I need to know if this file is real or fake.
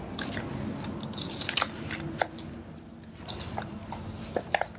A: real